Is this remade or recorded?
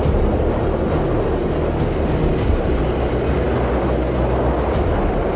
recorded